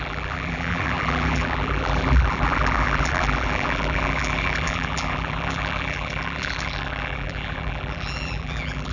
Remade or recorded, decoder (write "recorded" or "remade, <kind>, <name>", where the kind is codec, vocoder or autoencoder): remade, vocoder, BigVGAN v2